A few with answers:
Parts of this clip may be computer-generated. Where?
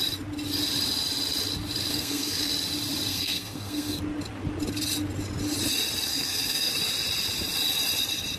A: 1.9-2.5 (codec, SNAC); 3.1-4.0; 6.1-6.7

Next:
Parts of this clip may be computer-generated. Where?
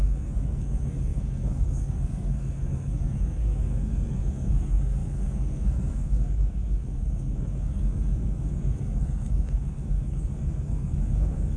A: 0.0-11.6 (codec, SNAC)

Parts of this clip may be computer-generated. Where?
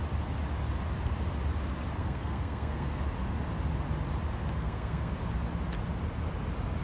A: 2.0-3.0 (codec, SNAC); 4.6-5.1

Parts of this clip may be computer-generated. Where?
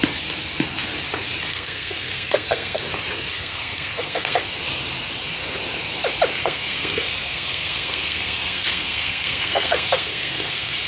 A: 1.5-2.8 (codec, SNAC); 3.3-4.4; 6.4-10.9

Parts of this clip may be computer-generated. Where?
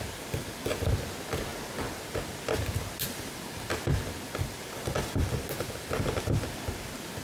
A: none